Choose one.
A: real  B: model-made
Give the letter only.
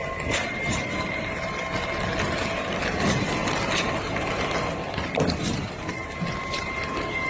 A